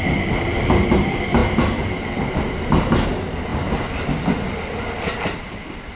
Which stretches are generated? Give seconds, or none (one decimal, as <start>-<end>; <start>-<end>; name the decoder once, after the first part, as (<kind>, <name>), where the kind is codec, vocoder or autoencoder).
none